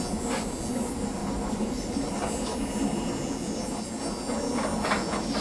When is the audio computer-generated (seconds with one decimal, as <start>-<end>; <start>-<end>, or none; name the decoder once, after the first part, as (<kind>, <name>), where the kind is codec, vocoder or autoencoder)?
1.2-2.2 (vocoder, BigVGAN v2)